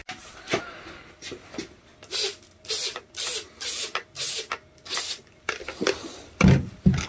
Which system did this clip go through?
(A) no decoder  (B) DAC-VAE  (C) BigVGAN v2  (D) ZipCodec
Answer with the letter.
A